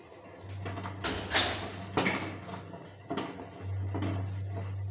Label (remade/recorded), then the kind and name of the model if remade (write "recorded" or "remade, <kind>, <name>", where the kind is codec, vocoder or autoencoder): recorded